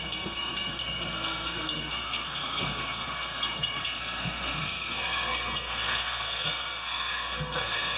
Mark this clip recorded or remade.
remade